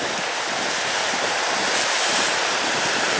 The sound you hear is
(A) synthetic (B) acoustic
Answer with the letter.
B